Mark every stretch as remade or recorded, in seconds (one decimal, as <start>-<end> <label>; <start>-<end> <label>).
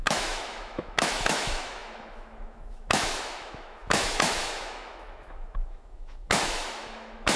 0.0-7.4 remade